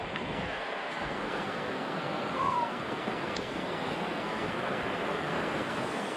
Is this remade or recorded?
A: remade